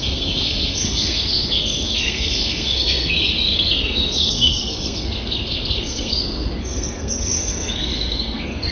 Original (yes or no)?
no